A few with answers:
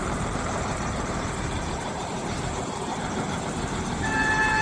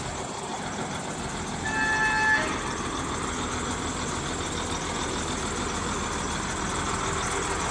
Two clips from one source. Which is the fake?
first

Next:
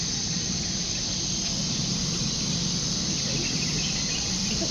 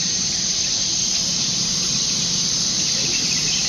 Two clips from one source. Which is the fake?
second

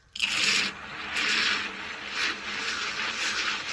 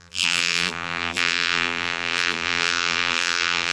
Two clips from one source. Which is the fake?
second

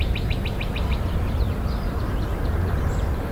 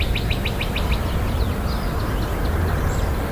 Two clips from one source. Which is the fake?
first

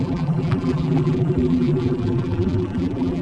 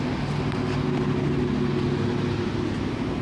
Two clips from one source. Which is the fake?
first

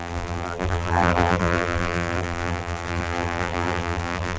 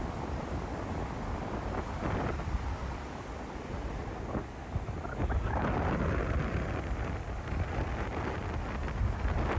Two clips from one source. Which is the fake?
first